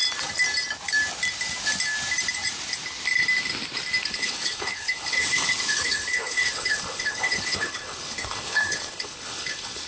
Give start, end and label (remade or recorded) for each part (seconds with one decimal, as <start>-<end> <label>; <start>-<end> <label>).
0.0-4.1 recorded; 4.1-9.9 remade